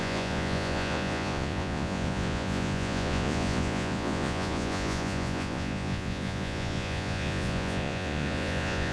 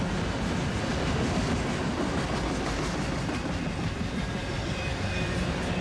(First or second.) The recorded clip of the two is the second